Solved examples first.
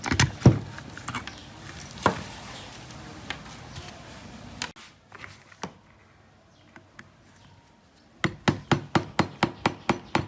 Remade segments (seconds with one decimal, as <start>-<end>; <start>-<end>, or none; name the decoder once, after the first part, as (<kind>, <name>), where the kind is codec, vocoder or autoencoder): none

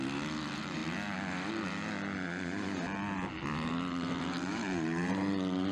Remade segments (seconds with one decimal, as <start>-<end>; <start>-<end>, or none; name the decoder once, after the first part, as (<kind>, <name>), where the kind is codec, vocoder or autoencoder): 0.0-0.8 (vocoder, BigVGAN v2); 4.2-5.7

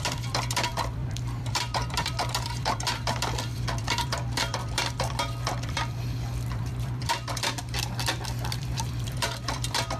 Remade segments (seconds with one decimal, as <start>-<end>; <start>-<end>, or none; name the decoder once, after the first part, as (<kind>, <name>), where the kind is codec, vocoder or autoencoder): 0.0-7.6 (vocoder, BigVGAN v2); 8.6-10.0